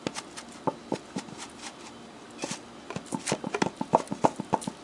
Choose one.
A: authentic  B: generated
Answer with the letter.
A